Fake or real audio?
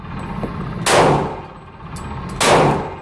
real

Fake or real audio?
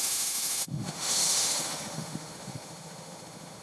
fake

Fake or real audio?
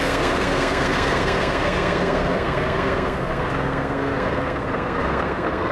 fake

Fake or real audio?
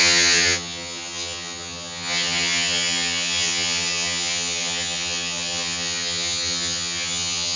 fake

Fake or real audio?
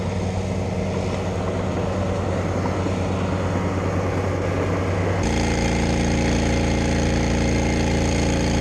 real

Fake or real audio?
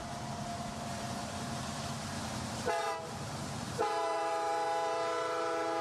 fake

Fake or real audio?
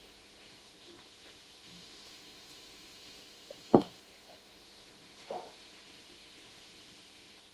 fake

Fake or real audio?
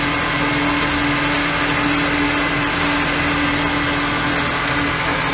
real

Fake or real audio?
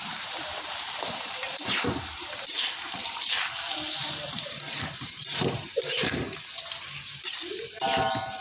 fake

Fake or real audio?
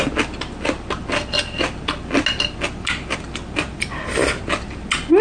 real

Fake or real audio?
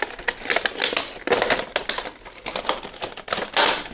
real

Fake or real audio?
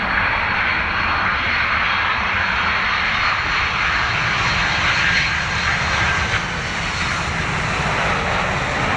real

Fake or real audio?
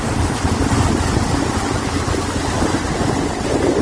real